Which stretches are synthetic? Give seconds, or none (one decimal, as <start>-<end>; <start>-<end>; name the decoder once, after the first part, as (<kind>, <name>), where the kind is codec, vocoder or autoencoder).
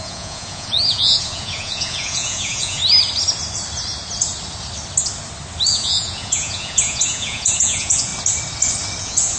0.0-2.8 (vocoder, Vocos); 5.7-8.1; 9.0-9.4